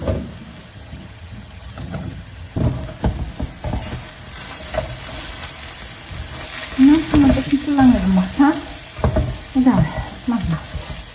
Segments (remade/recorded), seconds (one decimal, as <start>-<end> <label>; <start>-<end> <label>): 0.0-0.7 recorded; 0.7-2.6 remade; 2.6-11.1 recorded